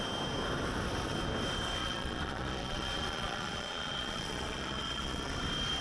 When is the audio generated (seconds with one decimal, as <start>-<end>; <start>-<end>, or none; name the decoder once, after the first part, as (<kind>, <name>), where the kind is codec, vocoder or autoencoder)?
1.8-5.3 (vocoder, Vocos)